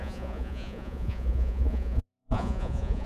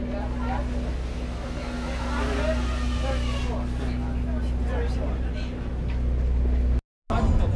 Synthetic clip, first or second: first